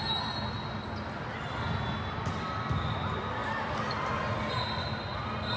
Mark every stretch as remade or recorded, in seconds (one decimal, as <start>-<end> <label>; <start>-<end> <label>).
0.0-5.6 recorded